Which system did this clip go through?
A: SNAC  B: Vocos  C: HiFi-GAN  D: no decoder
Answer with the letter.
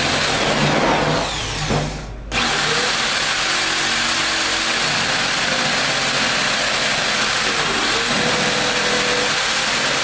D